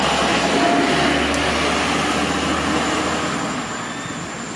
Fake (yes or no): no